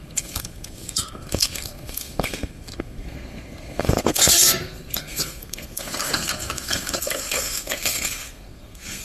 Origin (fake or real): fake